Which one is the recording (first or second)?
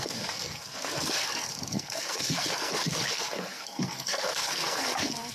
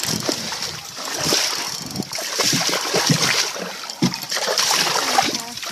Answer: second